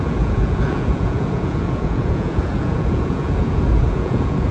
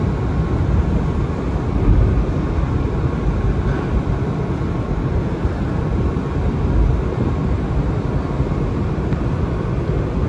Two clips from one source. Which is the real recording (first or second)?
second